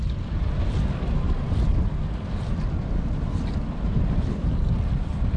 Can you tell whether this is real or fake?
real